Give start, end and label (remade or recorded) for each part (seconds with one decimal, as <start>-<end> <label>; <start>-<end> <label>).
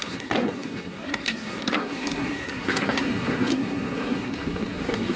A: 0.0-5.2 remade